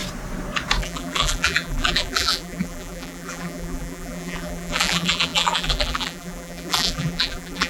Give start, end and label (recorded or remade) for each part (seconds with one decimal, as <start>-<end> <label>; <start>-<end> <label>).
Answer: 0.0-0.8 recorded; 0.8-7.7 remade